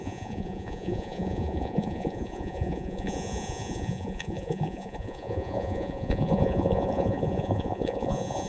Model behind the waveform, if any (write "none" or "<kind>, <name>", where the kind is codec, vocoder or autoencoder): vocoder, Vocos